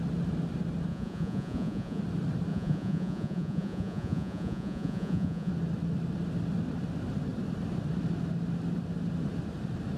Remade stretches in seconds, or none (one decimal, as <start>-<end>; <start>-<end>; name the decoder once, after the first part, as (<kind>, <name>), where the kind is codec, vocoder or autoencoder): 0.9-2.0 (vocoder, Vocos); 2.5-5.5